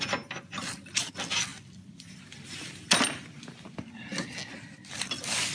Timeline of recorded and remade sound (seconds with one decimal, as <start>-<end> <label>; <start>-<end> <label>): 0.0-5.5 recorded